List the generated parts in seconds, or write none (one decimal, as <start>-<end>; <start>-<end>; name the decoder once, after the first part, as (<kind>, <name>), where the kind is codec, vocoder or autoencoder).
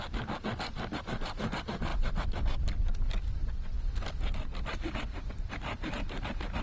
none